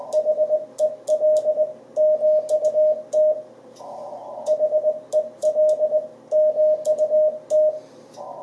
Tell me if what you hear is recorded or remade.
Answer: recorded